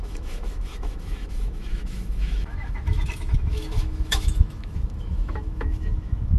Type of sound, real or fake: fake